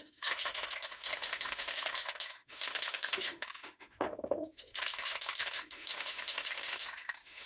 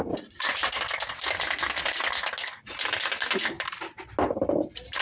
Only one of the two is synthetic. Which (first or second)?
first